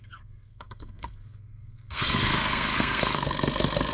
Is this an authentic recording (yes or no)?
no